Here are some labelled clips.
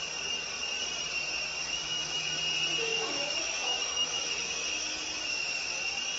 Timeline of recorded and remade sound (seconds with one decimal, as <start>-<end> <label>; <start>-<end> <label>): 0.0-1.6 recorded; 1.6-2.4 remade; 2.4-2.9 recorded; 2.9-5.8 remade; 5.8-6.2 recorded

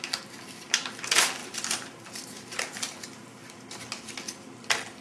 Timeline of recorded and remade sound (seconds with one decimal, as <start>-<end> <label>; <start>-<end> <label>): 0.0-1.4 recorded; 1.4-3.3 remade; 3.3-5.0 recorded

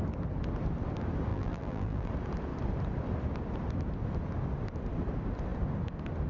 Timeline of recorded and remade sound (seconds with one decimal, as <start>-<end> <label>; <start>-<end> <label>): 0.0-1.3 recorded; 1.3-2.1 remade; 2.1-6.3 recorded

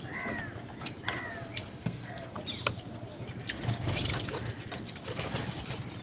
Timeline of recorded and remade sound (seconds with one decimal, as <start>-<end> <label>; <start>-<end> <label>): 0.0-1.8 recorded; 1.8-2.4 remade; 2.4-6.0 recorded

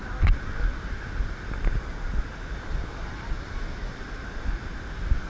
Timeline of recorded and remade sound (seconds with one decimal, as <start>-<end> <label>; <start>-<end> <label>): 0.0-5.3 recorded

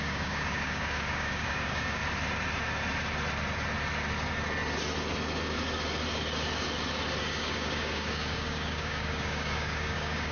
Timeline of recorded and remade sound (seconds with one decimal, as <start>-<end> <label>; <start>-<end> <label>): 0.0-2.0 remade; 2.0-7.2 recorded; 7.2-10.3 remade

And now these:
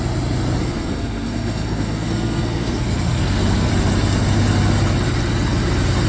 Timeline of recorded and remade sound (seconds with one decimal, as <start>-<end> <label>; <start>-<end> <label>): 0.0-0.6 recorded; 0.6-3.7 remade; 3.7-6.1 recorded

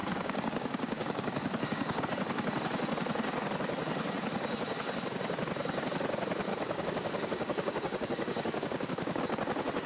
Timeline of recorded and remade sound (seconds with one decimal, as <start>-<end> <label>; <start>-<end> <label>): 0.0-2.0 remade; 2.0-6.5 recorded; 6.5-9.2 remade; 9.2-9.9 recorded